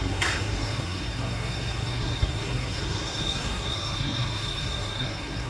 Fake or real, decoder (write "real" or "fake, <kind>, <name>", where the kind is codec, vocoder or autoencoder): fake, codec, SNAC